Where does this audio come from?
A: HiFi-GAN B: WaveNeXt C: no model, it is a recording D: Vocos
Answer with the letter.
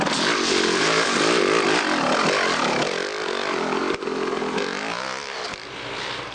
C